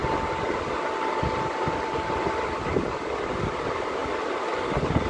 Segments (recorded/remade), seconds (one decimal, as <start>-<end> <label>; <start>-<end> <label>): 0.0-5.1 recorded